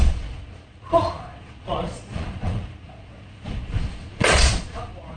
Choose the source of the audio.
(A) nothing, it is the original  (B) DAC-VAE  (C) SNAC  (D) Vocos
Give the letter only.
D